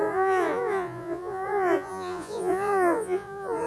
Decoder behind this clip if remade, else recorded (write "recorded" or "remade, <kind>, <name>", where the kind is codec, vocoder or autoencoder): remade, vocoder, Vocos